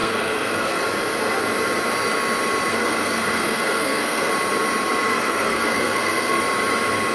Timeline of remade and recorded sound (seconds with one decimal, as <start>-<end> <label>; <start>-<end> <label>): 0.0-0.8 remade; 0.8-2.7 recorded; 2.7-4.3 remade; 4.3-5.1 recorded; 5.1-6.4 remade; 6.4-7.1 recorded